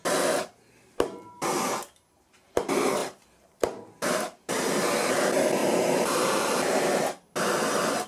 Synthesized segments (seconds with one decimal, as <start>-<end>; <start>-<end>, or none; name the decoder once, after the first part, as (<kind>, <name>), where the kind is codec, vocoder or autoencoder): 3.0-5.1 (vocoder, BigVGAN v2); 5.6-6.2